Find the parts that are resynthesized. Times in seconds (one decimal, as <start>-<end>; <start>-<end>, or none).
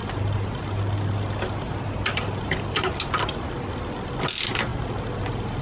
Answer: 0.0-3.4; 4.7-5.6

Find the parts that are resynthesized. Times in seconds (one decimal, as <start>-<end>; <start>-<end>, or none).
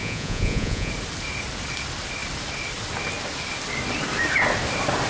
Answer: 0.0-0.9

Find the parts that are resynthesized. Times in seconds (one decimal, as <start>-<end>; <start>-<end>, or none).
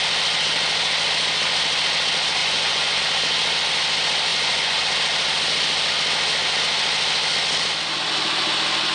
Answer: 2.4-3.0; 4.3-4.8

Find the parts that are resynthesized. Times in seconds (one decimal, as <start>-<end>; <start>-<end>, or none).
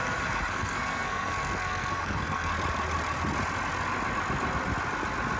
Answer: 0.0-2.5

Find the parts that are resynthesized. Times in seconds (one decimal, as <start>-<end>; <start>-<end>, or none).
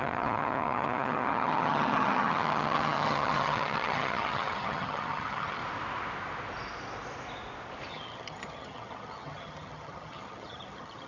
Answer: 0.0-5.6; 7.9-11.1